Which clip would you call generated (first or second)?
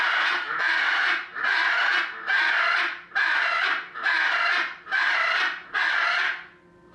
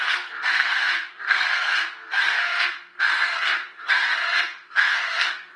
second